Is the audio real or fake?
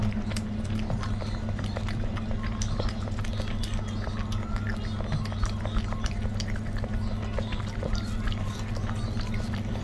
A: real